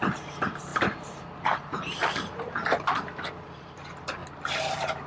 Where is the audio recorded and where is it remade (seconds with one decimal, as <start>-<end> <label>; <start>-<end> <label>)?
0.0-0.7 recorded; 0.7-3.8 remade; 3.8-5.1 recorded